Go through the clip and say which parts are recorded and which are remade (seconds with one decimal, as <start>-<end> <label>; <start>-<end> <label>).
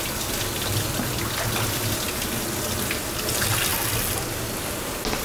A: 0.0-5.2 recorded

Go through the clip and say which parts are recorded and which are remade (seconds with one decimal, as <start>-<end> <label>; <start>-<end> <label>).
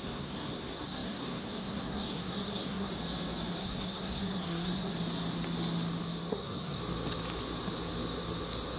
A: 0.0-2.9 remade; 2.9-3.6 recorded; 3.6-4.9 remade; 4.9-6.3 recorded; 6.3-6.8 remade; 6.8-8.8 recorded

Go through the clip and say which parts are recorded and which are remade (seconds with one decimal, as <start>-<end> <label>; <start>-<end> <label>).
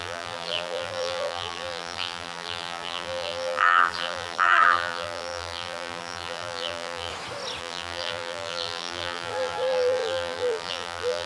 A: 0.0-7.1 remade; 7.1-7.6 recorded; 7.6-11.3 remade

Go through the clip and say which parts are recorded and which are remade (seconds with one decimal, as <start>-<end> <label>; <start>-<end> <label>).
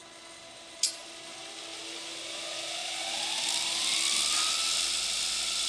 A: 0.0-5.7 recorded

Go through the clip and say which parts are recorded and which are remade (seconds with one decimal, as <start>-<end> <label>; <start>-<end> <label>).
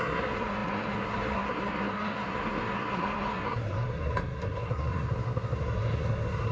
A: 0.0-6.5 remade